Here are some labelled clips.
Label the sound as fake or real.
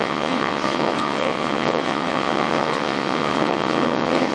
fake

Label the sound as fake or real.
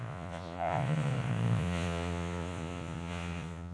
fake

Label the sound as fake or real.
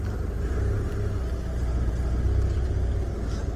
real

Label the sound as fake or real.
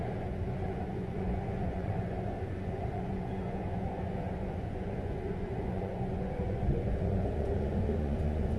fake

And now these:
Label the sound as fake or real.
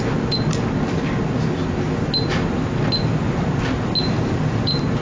real